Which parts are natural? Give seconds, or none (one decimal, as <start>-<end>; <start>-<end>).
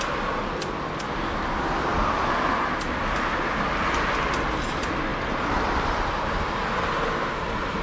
0.0-7.8